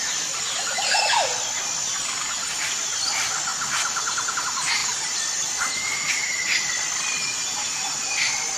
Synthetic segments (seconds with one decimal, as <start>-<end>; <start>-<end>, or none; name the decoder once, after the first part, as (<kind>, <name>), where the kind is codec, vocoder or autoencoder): none